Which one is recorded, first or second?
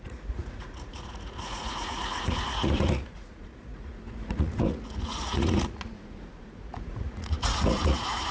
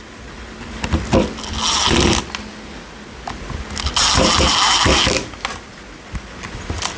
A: second